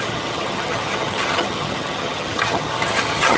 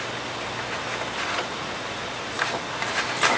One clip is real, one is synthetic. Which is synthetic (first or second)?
first